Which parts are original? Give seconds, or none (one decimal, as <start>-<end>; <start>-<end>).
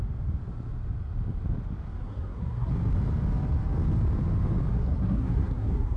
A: 0.0-2.0; 2.7-4.7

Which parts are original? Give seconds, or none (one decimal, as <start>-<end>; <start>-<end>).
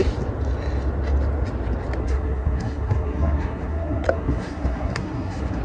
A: 0.0-2.0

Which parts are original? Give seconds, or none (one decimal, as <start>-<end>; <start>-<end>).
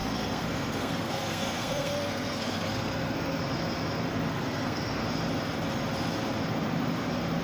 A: 3.4-4.3; 5.0-7.4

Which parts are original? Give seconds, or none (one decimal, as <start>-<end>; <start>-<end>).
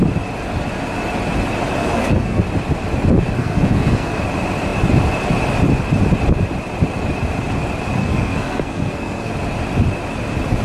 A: 0.0-1.8; 2.4-3.4; 4.1-8.0; 9.3-10.6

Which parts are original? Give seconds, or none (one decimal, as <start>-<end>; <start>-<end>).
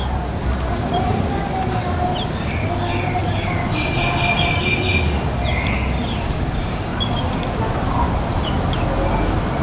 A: 0.0-9.6